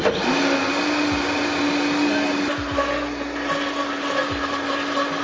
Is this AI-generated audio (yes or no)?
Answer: no